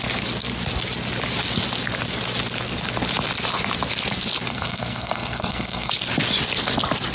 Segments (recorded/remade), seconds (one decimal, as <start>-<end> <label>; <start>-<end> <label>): 0.0-4.5 recorded; 4.5-5.9 remade; 5.9-7.1 recorded